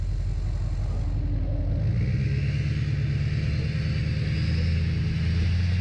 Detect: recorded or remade recorded